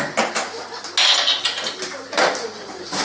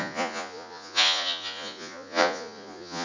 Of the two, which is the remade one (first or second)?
second